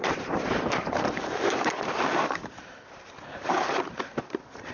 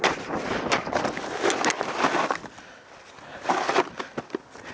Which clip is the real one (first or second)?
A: second